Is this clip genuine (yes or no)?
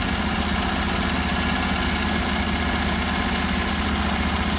yes